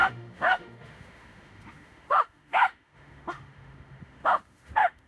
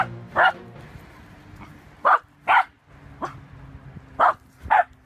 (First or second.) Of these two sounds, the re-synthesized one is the first